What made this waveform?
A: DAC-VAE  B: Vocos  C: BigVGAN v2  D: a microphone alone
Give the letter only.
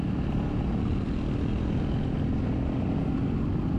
D